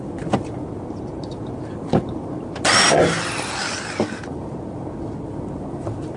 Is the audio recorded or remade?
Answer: remade